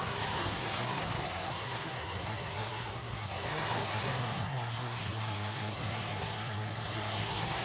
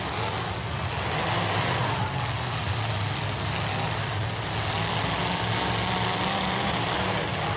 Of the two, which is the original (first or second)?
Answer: second